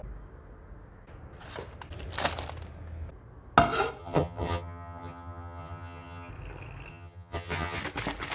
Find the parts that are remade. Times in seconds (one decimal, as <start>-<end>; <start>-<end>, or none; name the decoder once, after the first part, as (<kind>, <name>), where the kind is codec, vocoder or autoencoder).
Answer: 4.0-6.3 (vocoder, HiFi-GAN); 6.9-7.8